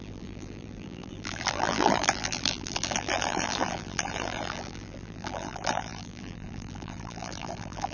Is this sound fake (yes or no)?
yes